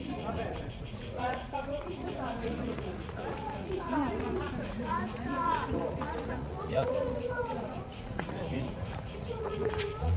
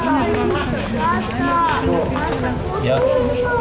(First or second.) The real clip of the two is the second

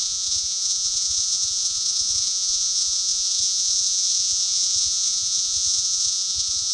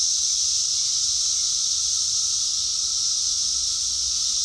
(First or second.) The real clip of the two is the second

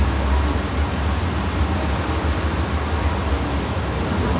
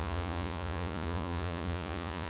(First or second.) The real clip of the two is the first